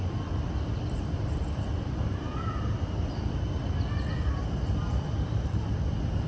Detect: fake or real fake